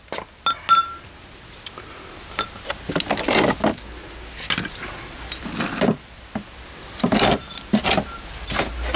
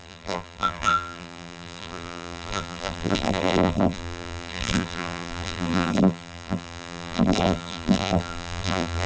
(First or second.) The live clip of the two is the first